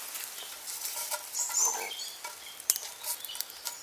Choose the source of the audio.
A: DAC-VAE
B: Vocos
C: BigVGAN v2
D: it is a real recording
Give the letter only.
D